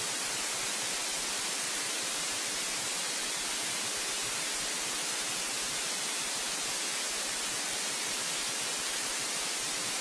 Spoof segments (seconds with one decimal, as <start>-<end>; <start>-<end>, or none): none